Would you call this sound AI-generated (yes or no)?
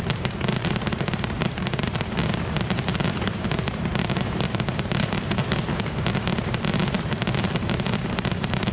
yes